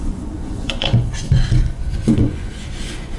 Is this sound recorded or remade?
remade